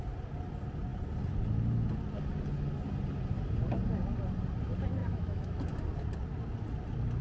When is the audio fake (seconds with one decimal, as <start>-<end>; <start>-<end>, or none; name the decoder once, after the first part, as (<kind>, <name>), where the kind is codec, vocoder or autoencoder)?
5.0-5.6 (autoencoder, DAC-VAE)